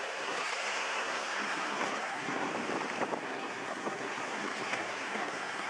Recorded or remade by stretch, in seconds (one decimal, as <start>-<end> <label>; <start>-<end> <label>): 0.0-2.5 remade; 2.5-3.2 recorded; 3.2-5.7 remade